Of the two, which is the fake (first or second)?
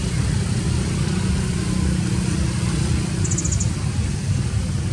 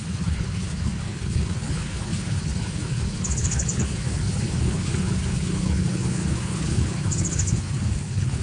second